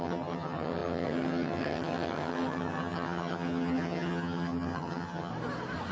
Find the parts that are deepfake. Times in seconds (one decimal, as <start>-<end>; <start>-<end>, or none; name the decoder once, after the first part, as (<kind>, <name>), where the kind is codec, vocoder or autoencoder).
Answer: 0.0-5.3 (vocoder, HiFi-GAN)